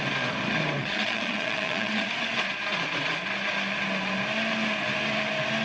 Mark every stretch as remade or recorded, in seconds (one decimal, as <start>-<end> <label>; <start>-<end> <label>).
0.0-0.8 recorded; 0.8-2.1 remade; 2.1-5.6 recorded